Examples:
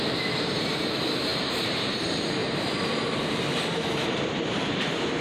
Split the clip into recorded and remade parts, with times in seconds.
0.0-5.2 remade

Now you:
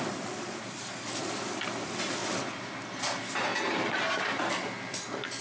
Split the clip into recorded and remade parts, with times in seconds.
0.0-5.4 recorded

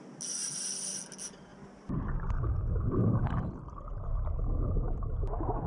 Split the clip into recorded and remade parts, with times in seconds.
0.0-5.7 recorded

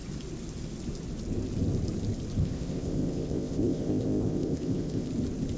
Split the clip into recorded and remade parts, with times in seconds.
0.0-2.4 recorded; 2.4-5.1 remade; 5.1-5.6 recorded

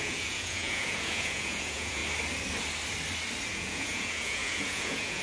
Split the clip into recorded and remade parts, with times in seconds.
0.0-2.0 remade; 2.0-3.5 recorded; 3.5-5.2 remade

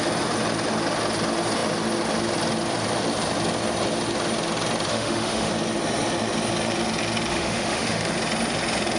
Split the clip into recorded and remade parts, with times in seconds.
0.0-4.9 recorded; 4.9-5.5 remade; 5.5-7.3 recorded; 7.3-8.1 remade; 8.1-9.0 recorded

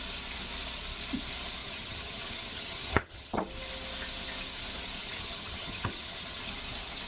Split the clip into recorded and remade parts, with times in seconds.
0.0-1.6 recorded; 1.6-3.4 remade; 3.4-5.0 recorded; 5.0-6.5 remade; 6.5-7.1 recorded